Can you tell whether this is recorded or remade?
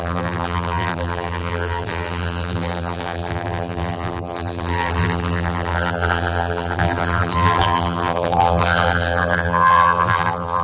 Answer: remade